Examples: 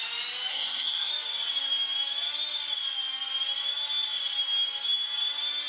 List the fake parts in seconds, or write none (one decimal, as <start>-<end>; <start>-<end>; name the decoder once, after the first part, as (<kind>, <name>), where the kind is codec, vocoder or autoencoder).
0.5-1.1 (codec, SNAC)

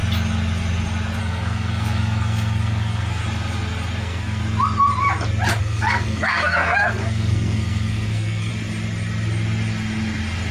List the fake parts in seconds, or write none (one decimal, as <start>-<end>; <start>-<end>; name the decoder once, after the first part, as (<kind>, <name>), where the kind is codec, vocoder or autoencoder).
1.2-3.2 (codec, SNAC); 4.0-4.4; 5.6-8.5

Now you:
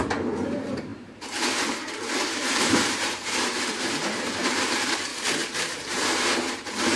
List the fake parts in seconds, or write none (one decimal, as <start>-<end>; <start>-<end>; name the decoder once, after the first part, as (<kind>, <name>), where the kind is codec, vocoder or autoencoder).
0.0-5.1 (vocoder, BigVGAN v2); 5.6-7.0

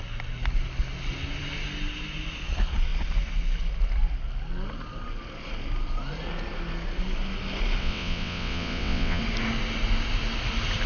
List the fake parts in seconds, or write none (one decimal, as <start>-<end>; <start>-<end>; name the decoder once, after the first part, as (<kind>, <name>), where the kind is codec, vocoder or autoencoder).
7.8-9.2 (vocoder, WaveNeXt)